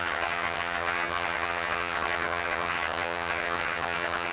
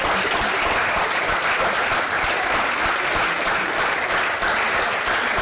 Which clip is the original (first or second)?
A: second